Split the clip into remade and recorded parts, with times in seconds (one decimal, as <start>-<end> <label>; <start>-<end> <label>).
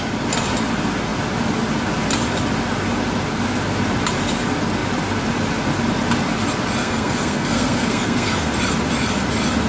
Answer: 0.0-6.8 recorded; 6.8-8.5 remade; 8.5-9.7 recorded